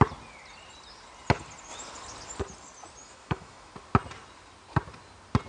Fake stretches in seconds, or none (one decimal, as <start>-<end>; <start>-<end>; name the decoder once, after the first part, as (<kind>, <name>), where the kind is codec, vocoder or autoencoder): 3.0-3.7 (autoencoder, DAC-VAE)